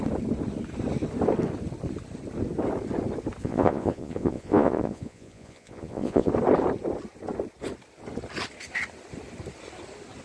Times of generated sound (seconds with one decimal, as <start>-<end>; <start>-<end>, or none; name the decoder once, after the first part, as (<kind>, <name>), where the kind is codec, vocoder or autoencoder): 3.4-6.3 (vocoder, Vocos)